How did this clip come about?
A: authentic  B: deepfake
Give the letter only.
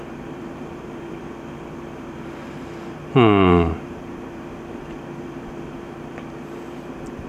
B